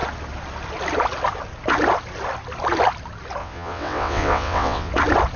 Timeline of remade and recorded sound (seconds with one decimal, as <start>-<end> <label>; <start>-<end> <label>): 0.0-3.4 recorded; 3.4-4.9 remade; 4.9-5.4 recorded